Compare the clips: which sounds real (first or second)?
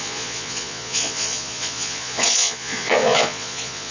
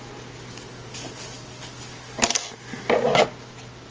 second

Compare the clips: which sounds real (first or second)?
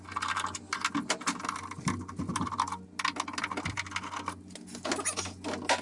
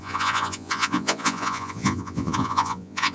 first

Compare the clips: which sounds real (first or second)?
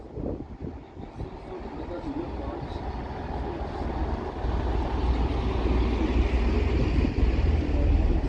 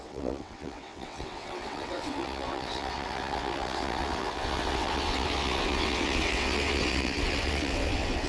first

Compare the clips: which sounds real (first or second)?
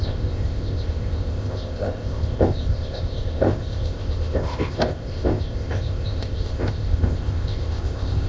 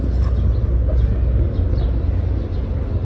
second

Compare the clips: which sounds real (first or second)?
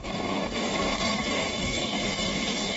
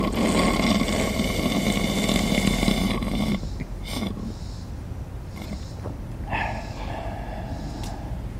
second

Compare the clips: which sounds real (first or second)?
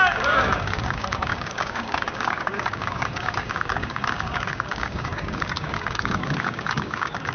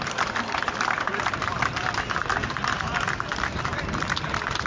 second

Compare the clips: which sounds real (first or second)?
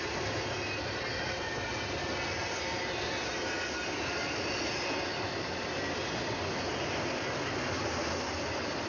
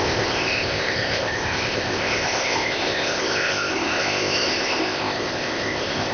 first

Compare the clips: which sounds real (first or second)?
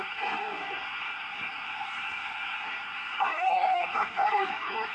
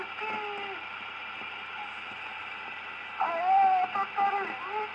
second